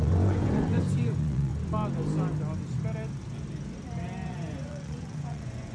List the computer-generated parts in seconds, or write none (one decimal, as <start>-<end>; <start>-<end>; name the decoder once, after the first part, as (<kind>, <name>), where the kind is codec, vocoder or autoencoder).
0.0-1.5 (vocoder, Vocos); 4.3-5.7